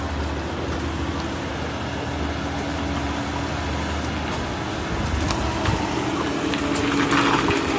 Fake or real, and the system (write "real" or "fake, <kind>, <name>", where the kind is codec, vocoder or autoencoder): real